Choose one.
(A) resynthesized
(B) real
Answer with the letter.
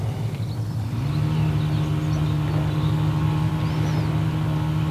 B